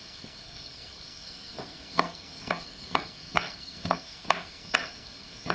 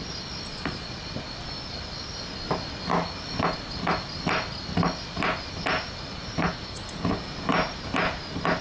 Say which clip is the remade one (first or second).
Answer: first